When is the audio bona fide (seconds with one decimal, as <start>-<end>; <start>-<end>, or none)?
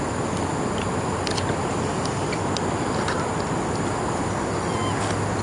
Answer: 0.0-5.4